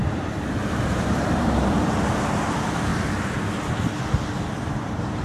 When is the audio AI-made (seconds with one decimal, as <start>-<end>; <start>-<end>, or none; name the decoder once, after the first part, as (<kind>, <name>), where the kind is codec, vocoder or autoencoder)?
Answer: 0.0-2.9 (vocoder, BigVGAN v2); 4.5-5.2